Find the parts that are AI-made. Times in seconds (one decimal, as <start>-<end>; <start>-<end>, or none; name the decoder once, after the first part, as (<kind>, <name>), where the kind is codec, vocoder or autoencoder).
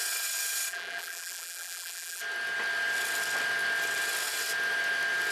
0.7-2.2 (vocoder, BigVGAN v2)